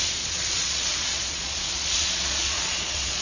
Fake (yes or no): yes